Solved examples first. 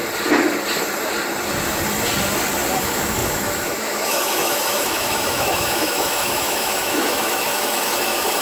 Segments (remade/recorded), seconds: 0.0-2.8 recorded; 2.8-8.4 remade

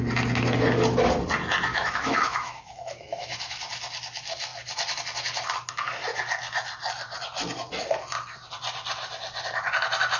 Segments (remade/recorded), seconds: 0.0-1.7 recorded; 1.7-3.6 remade; 3.6-10.2 recorded

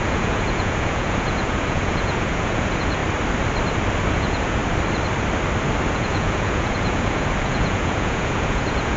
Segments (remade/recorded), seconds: 0.0-3.0 remade; 3.0-4.1 recorded; 4.1-4.6 remade; 4.6-5.9 recorded; 5.9-9.0 remade

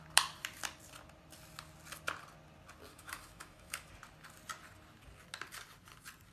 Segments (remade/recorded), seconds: 0.0-2.9 recorded; 2.9-3.9 remade; 3.9-6.3 recorded

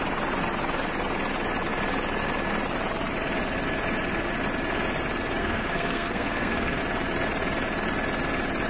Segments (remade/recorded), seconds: 0.0-5.4 recorded; 5.4-6.8 remade; 6.8-8.7 recorded

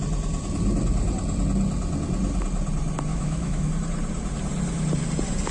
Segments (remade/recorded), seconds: 0.0-3.1 recorded; 3.1-3.7 remade; 3.7-5.5 recorded